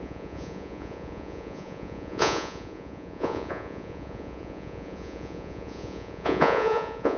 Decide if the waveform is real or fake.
fake